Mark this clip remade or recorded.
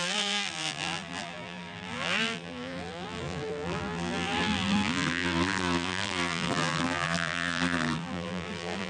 remade